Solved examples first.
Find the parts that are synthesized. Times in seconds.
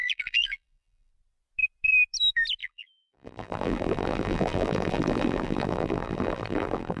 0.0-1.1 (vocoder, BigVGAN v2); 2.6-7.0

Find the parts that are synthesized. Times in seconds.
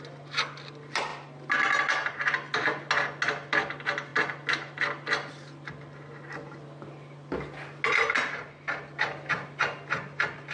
none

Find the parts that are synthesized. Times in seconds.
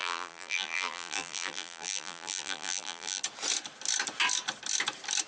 0.0-3.2 (vocoder, BigVGAN v2)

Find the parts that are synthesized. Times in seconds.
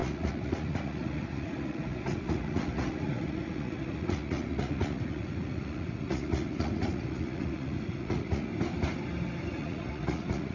0.0-8.5 (vocoder, Vocos); 9.5-10.5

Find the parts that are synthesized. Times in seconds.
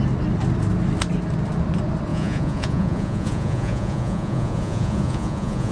2.1-5.7 (vocoder, Vocos)